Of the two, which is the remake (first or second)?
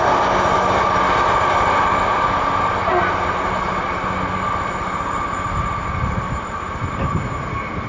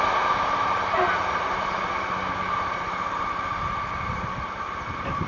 second